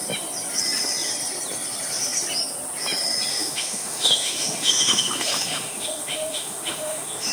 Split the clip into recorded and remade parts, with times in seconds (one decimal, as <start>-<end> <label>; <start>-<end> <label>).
0.0-3.3 recorded; 3.3-7.3 remade